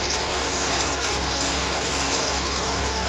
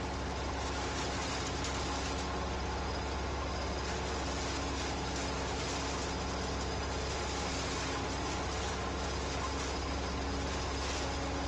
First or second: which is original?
second